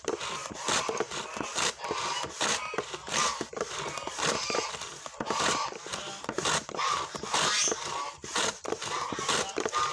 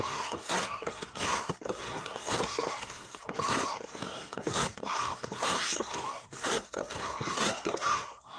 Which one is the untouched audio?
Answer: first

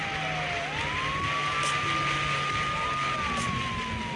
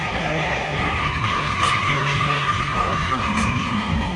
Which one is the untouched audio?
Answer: first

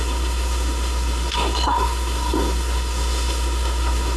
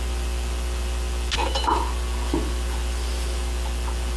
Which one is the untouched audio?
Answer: second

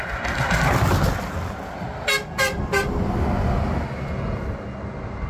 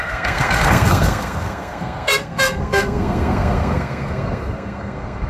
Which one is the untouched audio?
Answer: first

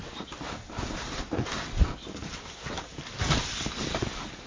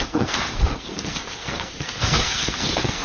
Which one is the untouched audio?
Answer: first